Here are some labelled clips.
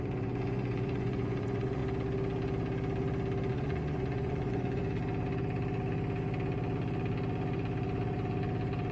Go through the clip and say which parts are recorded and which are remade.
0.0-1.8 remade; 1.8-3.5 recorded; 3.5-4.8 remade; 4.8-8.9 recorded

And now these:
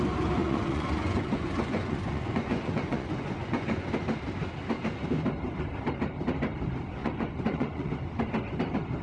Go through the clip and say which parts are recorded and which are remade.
0.0-0.4 recorded; 0.4-3.9 remade; 3.9-7.0 recorded; 7.0-7.9 remade; 7.9-9.0 recorded

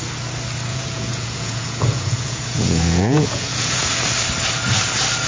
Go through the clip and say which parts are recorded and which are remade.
0.0-0.7 recorded; 0.7-3.9 remade; 3.9-5.3 recorded

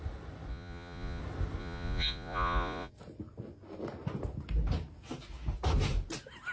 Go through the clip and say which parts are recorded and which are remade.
0.0-0.5 recorded; 0.5-1.2 remade; 1.2-1.6 recorded; 1.6-2.9 remade; 2.9-6.5 recorded

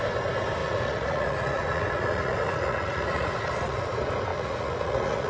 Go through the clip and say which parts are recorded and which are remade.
0.0-0.6 recorded; 0.6-3.8 remade; 3.8-4.3 recorded; 4.3-5.3 remade

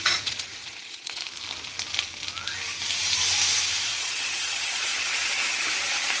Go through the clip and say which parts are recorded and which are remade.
0.0-1.2 remade; 1.2-3.8 recorded; 3.8-4.9 remade; 4.9-6.2 recorded